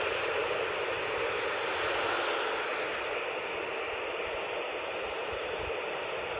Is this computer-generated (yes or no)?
no